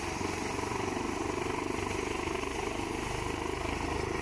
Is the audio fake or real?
real